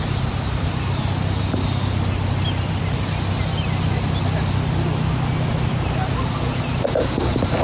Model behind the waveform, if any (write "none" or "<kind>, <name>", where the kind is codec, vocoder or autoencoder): none